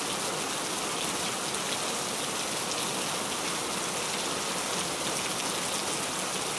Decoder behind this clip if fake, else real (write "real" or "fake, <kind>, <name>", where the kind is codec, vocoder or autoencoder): real